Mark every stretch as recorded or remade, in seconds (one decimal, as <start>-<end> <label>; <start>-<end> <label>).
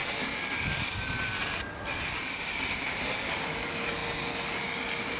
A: 0.0-5.2 recorded